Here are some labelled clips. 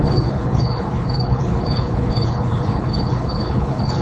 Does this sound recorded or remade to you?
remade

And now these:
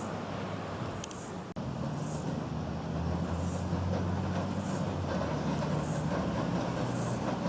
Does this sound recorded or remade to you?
recorded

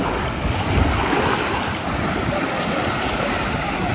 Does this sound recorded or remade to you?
recorded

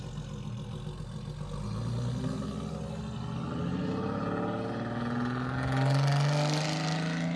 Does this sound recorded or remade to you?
recorded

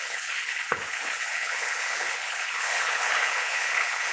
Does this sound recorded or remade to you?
remade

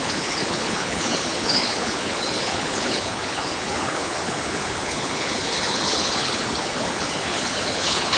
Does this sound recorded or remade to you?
remade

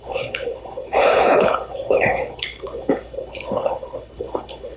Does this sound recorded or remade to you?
remade